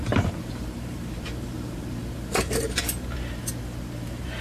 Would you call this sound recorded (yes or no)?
no